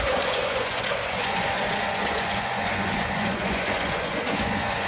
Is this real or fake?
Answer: fake